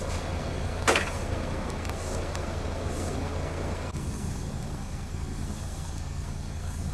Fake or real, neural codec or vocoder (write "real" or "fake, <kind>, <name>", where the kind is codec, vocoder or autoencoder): fake, codec, SNAC